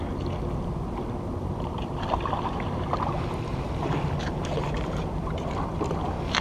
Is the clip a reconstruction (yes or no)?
no